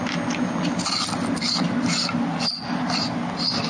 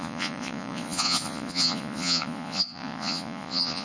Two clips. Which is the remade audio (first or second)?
second